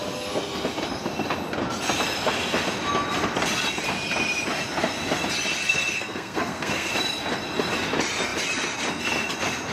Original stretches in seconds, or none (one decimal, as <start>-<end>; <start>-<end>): 0.0-5.6; 6.9-9.7

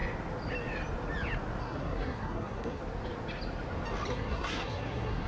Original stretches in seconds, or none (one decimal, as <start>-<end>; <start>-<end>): 0.0-1.6; 2.8-4.1

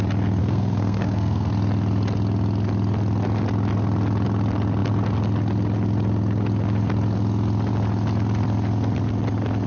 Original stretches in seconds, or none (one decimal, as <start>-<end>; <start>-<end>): 0.0-0.4; 1.5-9.7

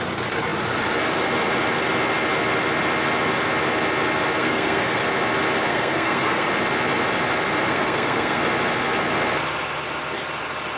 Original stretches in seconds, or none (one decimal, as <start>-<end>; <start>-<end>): 0.0-4.4; 5.0-5.7; 6.5-7.6; 8.4-10.8

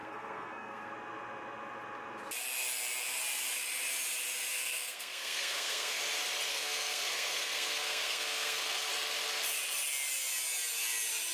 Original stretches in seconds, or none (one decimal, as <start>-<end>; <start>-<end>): 0.9-4.5; 6.0-6.5; 8.9-11.3

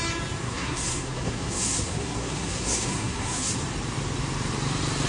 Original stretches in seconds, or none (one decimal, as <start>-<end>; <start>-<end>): 0.0-0.4; 3.5-5.1

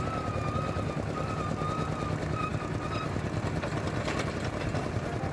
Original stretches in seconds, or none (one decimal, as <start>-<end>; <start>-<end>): 0.0-5.3

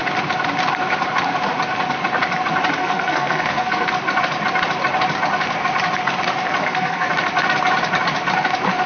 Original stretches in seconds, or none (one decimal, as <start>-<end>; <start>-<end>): 0.0-2.8; 3.9-6.6; 7.1-8.9